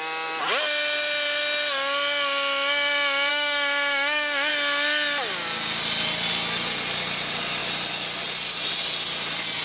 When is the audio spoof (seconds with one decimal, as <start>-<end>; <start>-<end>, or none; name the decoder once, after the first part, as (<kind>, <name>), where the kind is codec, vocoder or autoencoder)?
3.3-4.5 (autoencoder, DAC-VAE)